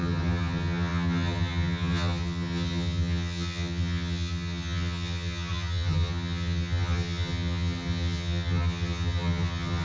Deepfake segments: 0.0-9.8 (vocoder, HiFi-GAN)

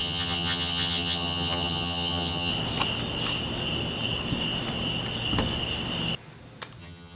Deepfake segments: 0.0-2.5 (vocoder, HiFi-GAN); 6.8-7.2

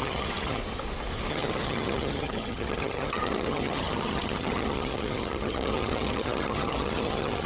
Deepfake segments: 0.0-0.6 (vocoder, HiFi-GAN); 1.3-7.5

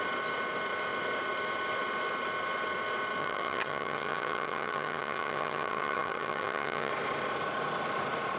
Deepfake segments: 3.2-6.9 (vocoder, HiFi-GAN)

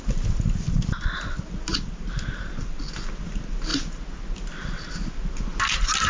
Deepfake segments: none